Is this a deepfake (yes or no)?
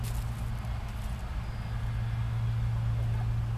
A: no